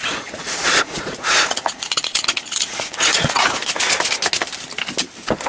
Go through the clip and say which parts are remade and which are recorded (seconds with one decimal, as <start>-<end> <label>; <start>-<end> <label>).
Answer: 0.0-3.6 remade; 3.6-5.5 recorded